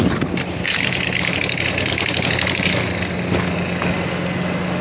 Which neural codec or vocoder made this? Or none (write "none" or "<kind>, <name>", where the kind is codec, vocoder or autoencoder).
none